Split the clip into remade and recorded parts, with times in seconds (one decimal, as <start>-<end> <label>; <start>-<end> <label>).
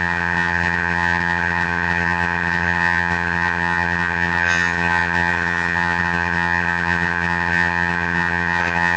0.0-9.0 remade